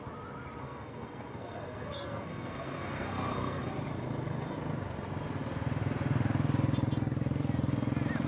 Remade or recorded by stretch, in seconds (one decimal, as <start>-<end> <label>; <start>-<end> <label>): 0.0-0.6 recorded; 0.6-3.7 remade; 3.7-8.3 recorded